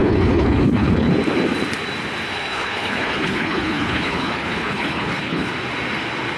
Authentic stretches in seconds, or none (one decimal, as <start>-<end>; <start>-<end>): 1.1-2.3; 5.5-6.4